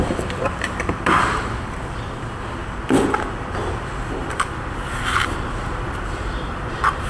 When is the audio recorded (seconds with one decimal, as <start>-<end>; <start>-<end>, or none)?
2.6-3.7